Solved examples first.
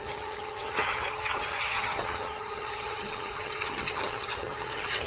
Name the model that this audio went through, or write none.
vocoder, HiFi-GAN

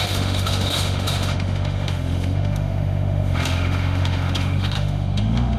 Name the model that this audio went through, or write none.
autoencoder, DAC-VAE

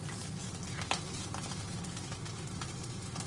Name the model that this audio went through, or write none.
none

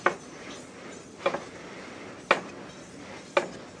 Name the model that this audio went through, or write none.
none